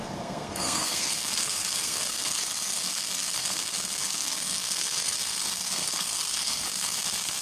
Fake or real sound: fake